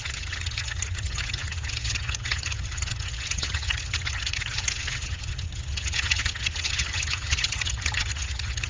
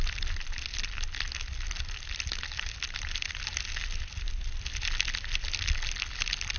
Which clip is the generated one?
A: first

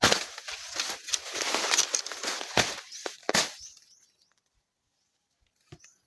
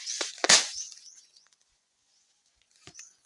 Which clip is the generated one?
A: second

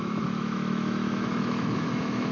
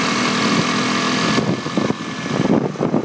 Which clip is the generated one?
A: first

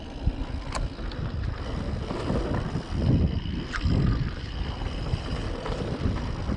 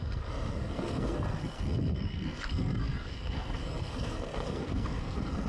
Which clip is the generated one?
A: second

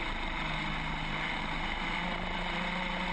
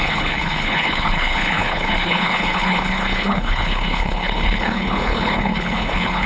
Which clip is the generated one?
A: second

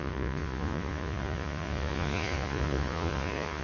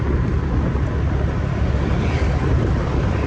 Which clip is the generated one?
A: first